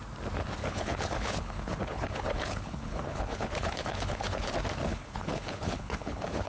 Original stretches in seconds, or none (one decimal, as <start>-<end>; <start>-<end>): 0.0-0.6; 4.5-4.9